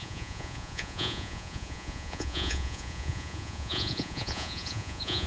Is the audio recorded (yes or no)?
no